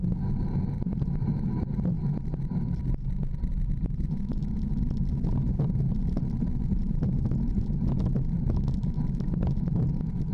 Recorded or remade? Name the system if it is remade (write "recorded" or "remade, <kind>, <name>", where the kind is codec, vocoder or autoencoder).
recorded